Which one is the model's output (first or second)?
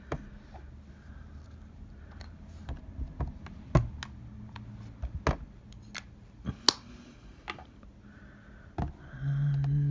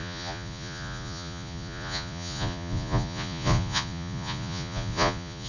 second